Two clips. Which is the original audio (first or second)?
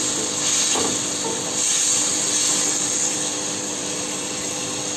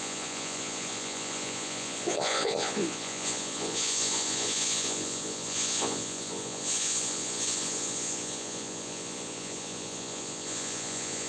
first